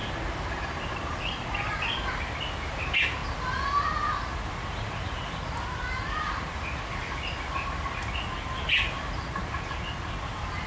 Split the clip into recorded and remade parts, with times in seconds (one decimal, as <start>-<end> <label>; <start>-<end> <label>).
0.0-10.7 recorded

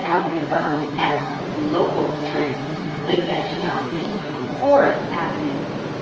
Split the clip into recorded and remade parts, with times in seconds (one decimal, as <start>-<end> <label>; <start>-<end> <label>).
0.0-1.4 remade; 1.4-2.1 recorded; 2.1-4.9 remade; 4.9-6.0 recorded

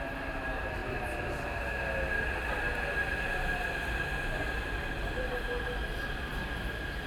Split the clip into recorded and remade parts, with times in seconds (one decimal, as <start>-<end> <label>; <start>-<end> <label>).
0.0-7.1 recorded

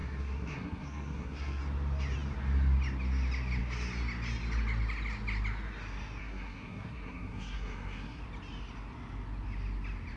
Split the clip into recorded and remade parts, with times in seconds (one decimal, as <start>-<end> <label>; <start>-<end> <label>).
0.0-1.6 remade; 1.6-6.2 recorded; 6.2-8.2 remade; 8.2-10.2 recorded

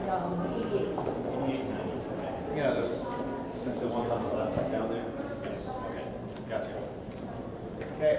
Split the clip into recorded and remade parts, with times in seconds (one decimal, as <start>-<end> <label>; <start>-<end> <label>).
0.0-3.9 recorded; 3.9-4.3 remade; 4.3-6.9 recorded; 6.9-8.2 remade

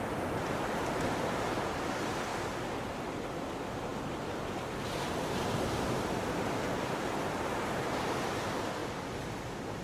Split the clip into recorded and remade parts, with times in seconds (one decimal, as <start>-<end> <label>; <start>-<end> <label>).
0.0-9.8 recorded